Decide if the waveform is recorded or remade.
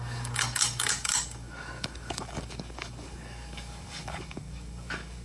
remade